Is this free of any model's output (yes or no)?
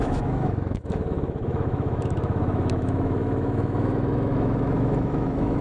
no